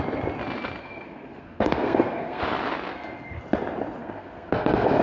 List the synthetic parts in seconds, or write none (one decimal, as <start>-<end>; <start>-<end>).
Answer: 0.8-2.4; 2.9-3.4; 4.0-5.0